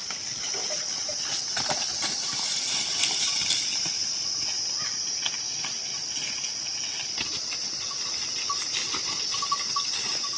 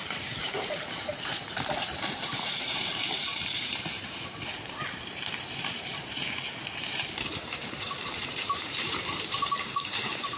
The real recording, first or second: first